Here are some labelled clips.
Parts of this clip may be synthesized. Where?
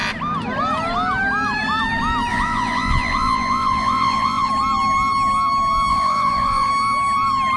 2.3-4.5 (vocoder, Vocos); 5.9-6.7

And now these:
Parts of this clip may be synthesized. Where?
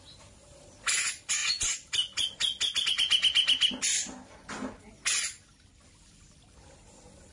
none